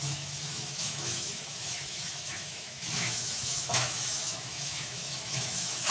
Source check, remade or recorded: remade